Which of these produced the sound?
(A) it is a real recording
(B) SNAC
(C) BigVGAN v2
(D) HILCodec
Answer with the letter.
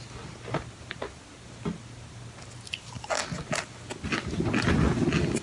A